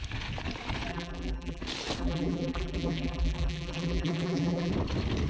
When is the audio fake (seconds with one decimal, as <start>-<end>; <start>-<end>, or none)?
0.9-1.6; 2.0-4.7